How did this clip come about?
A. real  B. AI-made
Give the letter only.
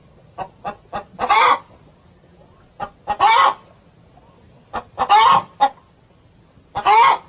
A